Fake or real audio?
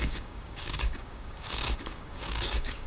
fake